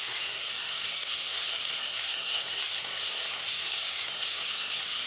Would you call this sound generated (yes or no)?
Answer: yes